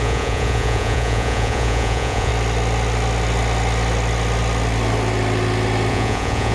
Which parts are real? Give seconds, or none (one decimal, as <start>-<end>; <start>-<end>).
2.3-5.9